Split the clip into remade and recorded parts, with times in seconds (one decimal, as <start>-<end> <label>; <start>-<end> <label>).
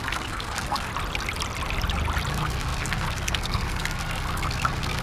0.0-0.9 remade; 0.9-2.3 recorded; 2.3-5.0 remade